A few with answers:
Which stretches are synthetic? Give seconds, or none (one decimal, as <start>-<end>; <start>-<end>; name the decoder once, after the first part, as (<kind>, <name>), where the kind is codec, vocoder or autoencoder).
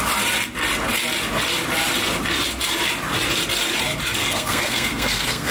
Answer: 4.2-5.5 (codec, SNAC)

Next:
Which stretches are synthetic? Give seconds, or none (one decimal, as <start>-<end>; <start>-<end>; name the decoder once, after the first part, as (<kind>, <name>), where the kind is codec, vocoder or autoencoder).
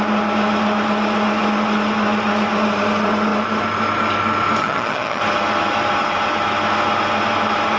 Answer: 4.6-5.2 (vocoder, HiFi-GAN)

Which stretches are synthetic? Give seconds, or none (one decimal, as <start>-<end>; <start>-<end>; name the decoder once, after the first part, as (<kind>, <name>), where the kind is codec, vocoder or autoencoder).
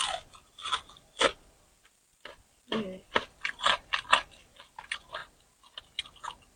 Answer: 0.0-5.2 (vocoder, BigVGAN v2)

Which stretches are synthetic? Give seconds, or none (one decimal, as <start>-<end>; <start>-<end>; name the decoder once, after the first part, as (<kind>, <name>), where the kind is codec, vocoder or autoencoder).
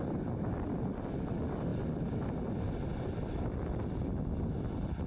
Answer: none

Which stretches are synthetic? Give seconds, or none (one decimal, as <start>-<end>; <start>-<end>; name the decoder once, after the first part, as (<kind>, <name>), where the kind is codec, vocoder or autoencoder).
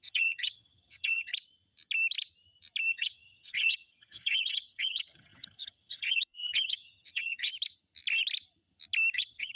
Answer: 0.0-1.3 (vocoder, HiFi-GAN); 2.9-7.5; 9.1-9.6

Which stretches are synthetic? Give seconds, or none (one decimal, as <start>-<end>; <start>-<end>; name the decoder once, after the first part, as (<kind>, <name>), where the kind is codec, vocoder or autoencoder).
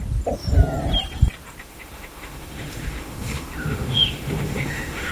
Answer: 1.6-5.1 (autoencoder, DAC-VAE)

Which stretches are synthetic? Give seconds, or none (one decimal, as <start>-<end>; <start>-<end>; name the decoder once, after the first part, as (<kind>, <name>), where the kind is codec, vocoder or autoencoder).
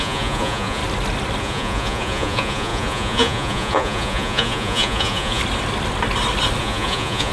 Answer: 0.0-0.8 (vocoder, Vocos); 1.4-5.4; 6.6-7.3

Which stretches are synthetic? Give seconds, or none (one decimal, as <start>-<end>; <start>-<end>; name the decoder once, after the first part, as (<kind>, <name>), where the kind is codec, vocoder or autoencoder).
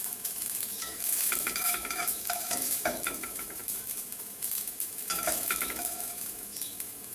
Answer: 0.0-7.1 (autoencoder, DAC-VAE)